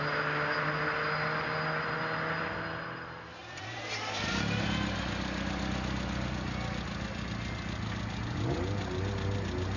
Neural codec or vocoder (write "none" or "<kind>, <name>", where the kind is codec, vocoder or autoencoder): none